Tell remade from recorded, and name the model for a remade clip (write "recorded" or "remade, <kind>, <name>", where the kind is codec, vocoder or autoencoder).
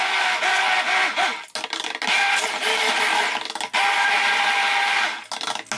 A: recorded